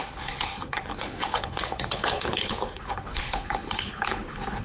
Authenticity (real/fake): fake